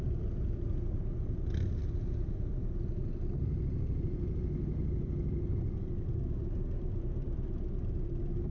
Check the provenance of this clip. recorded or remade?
recorded